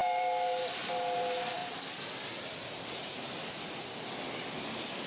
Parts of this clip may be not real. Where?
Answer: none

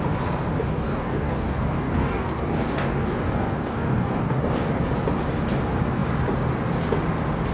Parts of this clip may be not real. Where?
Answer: 0.6-4.6 (codec, DAC)

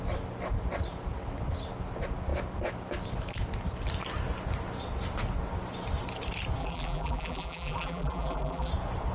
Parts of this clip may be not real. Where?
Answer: 6.6-8.7 (vocoder, BigVGAN v2)

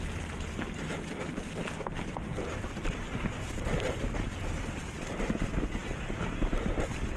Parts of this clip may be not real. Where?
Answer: none

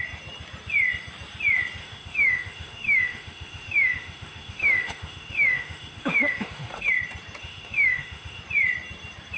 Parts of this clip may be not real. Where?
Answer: 1.8-6.9 (autoencoder, DAC-VAE); 7.4-8.4